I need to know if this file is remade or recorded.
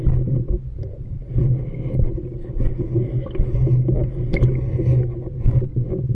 recorded